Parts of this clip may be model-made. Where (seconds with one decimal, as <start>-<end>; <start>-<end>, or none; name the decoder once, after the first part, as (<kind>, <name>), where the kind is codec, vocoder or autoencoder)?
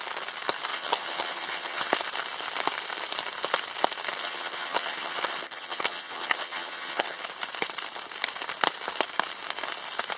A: 0.7-1.9 (vocoder, HiFi-GAN); 4.2-7.2